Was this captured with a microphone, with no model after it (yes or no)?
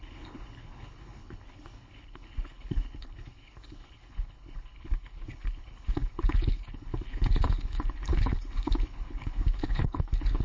no